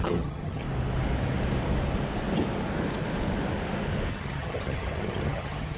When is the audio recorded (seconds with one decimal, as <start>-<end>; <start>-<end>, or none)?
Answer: 0.6-4.1